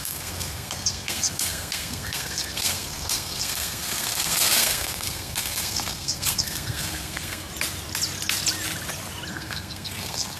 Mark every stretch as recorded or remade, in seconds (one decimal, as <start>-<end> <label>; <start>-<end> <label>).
0.0-7.5 remade; 7.5-9.3 recorded; 9.3-10.4 remade